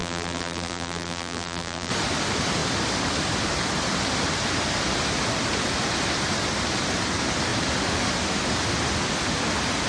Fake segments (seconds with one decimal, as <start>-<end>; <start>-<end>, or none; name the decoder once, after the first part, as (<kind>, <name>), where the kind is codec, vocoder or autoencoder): 0.0-1.9 (vocoder, BigVGAN v2)